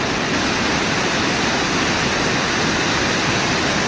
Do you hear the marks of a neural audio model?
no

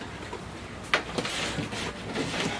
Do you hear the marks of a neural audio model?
no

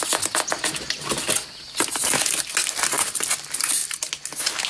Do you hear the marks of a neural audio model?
no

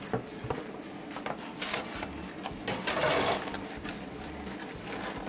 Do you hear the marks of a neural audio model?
no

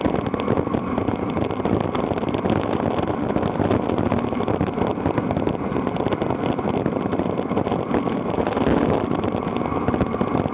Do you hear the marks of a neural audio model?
no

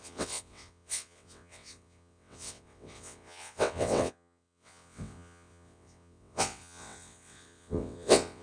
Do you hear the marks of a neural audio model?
yes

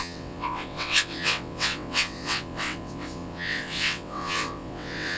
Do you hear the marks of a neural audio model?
yes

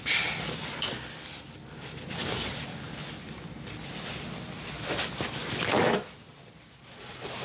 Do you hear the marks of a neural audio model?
no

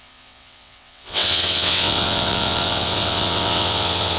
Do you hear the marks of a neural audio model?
yes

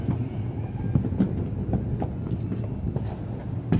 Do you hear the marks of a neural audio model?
no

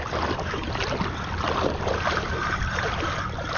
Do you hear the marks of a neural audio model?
no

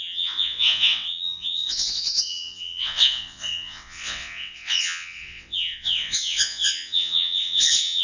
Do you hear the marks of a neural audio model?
yes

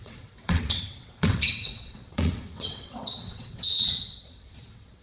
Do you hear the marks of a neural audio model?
yes